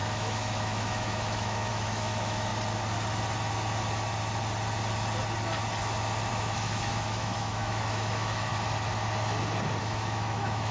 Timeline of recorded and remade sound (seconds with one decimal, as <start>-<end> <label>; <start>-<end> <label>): 0.0-2.5 remade; 2.5-6.3 recorded; 6.3-8.5 remade; 8.5-9.8 recorded; 9.8-10.7 remade